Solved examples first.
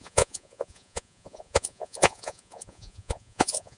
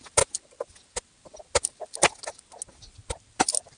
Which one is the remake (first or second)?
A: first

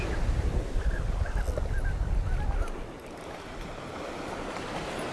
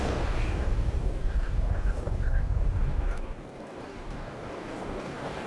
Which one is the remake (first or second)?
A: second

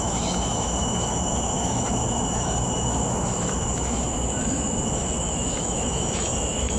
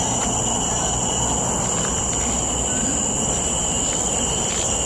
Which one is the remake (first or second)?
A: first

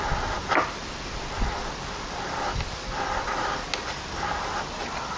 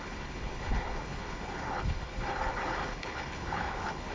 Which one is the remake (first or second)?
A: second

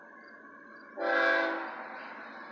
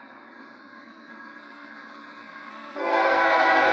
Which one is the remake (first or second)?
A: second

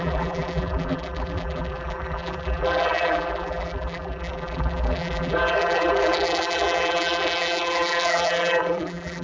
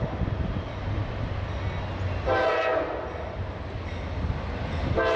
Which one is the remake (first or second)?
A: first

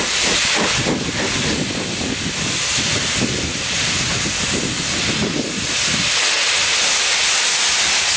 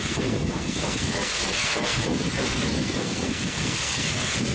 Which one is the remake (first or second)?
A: second